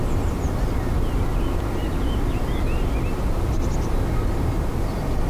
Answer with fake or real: real